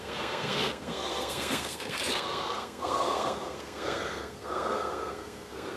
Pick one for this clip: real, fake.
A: fake